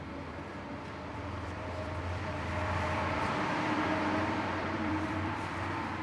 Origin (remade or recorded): remade